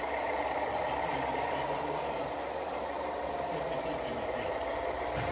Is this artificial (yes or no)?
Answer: yes